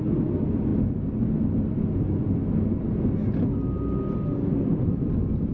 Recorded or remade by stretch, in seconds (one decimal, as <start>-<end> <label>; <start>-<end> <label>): 0.0-5.5 recorded